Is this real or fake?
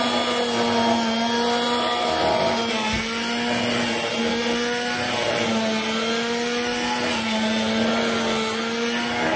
real